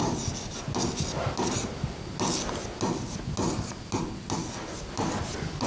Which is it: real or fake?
real